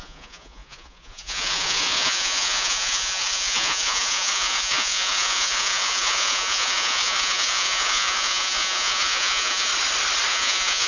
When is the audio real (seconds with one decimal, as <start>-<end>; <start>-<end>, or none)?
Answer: 9.7-10.3